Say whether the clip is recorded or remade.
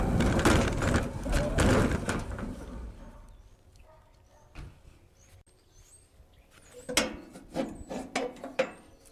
recorded